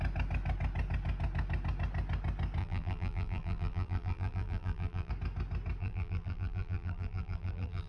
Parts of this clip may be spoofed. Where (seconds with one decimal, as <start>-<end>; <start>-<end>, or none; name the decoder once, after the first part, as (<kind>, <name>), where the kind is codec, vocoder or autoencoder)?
2.6-5.1 (vocoder, BigVGAN v2); 5.8-7.9